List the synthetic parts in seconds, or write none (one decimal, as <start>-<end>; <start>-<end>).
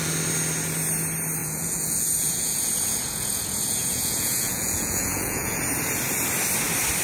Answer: 1.4-5.6